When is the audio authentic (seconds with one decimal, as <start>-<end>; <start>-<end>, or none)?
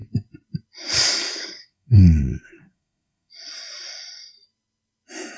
0.0-1.2; 3.3-5.4